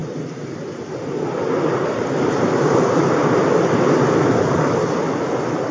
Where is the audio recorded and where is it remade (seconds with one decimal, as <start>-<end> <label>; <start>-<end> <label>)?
0.0-5.7 recorded